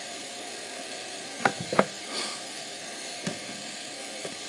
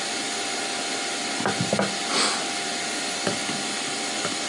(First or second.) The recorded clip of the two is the second